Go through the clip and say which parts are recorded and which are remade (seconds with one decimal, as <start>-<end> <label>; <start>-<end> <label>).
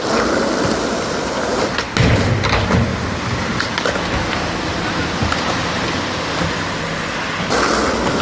0.0-8.2 recorded